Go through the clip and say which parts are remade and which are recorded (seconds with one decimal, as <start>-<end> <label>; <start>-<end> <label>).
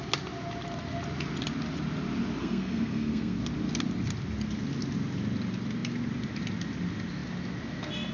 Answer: 0.0-2.4 recorded; 2.4-3.4 remade; 3.4-8.1 recorded